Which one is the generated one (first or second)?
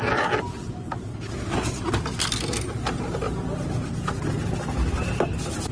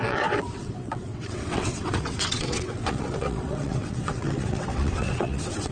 second